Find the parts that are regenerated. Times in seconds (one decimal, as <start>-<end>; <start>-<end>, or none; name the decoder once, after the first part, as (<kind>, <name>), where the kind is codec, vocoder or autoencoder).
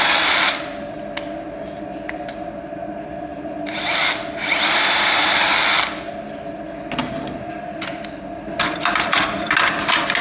3.3-3.8 (vocoder, BigVGAN v2)